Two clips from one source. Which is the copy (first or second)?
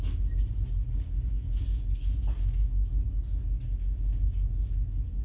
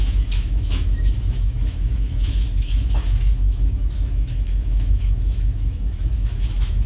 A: second